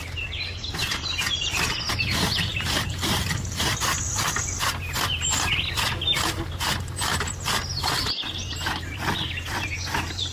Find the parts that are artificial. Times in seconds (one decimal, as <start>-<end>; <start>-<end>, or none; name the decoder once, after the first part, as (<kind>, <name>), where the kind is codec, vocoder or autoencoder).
2.5-3.8 (vocoder, BigVGAN v2)